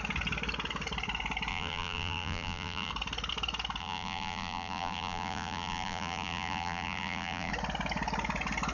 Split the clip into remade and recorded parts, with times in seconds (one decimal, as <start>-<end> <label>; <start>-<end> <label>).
0.0-1.5 recorded; 1.5-2.9 remade; 2.9-3.8 recorded; 3.8-7.5 remade; 7.5-8.7 recorded